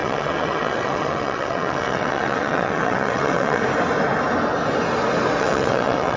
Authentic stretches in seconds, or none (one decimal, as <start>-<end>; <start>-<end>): 3.6-5.4